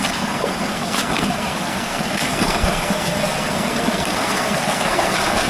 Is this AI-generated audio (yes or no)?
yes